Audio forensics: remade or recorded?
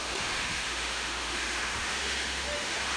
remade